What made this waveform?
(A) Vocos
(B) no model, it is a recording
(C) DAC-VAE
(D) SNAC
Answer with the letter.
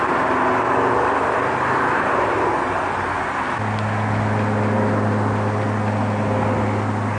B